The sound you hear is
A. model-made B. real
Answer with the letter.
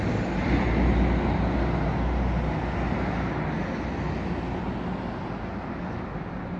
B